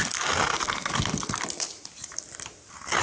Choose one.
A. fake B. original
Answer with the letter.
B